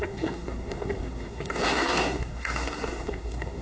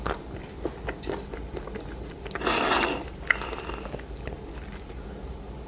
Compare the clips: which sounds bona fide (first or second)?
second